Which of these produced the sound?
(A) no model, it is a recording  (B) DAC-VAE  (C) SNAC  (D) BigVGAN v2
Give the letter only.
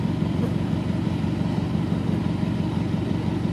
A